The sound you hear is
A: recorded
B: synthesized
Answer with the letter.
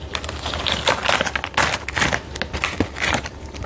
A